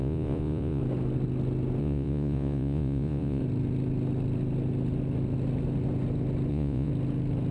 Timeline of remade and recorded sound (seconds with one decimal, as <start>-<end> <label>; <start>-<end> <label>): 0.0-0.8 remade; 0.8-1.8 recorded; 1.8-3.4 remade; 3.4-6.5 recorded; 6.5-6.9 remade; 6.9-7.5 recorded